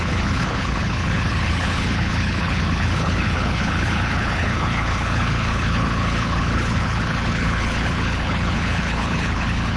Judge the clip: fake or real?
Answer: fake